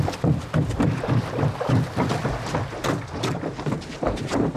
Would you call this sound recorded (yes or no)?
yes